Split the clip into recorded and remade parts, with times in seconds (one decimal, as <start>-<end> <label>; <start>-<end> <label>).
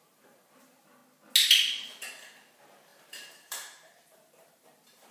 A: 0.0-1.0 remade; 1.0-2.5 recorded; 2.5-5.1 remade